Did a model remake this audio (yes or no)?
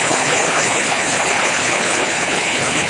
yes